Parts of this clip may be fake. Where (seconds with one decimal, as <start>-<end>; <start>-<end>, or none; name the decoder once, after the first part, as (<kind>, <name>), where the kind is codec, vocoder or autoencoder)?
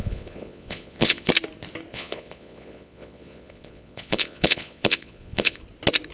0.0-1.3 (vocoder, Vocos); 1.9-5.6